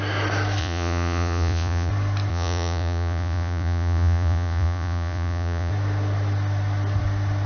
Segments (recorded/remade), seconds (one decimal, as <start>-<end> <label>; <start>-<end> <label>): 0.0-0.6 recorded; 0.6-1.9 remade; 1.9-2.3 recorded; 2.3-5.7 remade; 5.7-7.5 recorded